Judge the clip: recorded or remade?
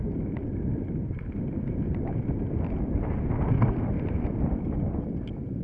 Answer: recorded